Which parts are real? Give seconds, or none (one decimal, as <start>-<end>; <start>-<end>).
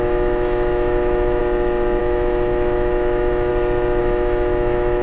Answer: 1.4-2.0; 3.5-4.0